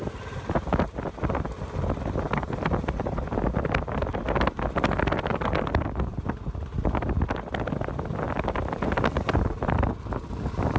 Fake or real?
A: real